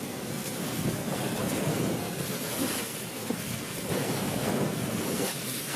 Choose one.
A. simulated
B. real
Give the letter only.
A